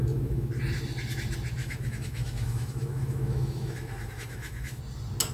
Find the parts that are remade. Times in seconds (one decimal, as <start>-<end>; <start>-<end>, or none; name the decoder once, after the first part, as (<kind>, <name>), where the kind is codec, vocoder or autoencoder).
0.0-0.5 (autoencoder, DAC-VAE); 1.6-4.8